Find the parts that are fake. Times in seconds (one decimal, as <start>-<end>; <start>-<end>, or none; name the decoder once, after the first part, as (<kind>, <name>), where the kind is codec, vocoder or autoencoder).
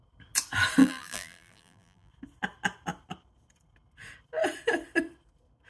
0.8-2.1 (vocoder, BigVGAN v2)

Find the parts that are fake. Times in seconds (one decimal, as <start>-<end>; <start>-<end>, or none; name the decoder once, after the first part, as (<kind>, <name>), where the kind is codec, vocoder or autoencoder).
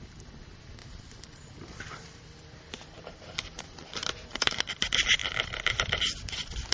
0.8-4.7 (vocoder, BigVGAN v2); 5.2-5.7